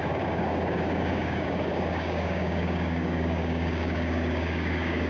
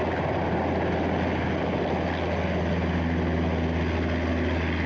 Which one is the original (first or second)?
second